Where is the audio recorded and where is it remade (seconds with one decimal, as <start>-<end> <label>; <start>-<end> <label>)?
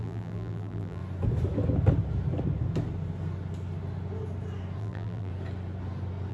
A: 0.0-1.0 remade; 1.0-4.8 recorded; 4.8-5.3 remade; 5.3-6.3 recorded